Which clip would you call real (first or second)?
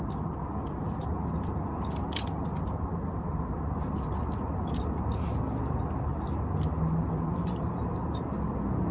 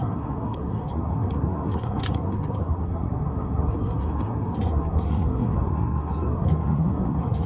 first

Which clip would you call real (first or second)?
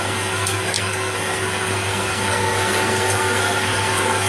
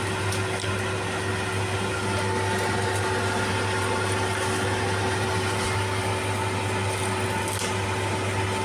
second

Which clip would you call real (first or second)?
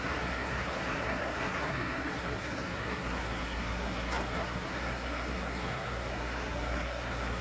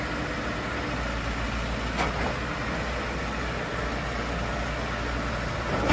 second